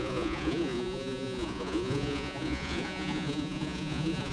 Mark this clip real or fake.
fake